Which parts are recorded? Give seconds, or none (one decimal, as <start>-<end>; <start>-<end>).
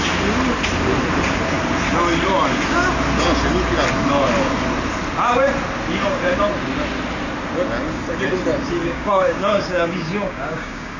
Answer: 0.0-8.8